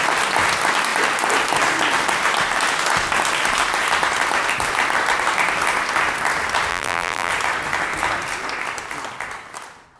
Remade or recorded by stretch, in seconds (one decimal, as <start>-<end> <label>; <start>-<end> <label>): 0.0-6.7 recorded; 6.7-7.3 remade; 7.3-10.0 recorded